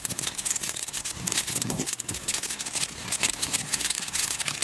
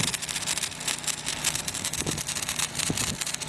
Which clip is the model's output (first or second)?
first